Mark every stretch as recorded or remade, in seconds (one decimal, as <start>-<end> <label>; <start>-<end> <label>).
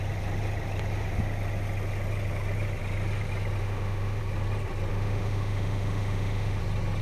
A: 0.0-3.6 recorded; 3.6-4.2 remade; 4.2-4.9 recorded; 4.9-6.6 remade; 6.6-7.0 recorded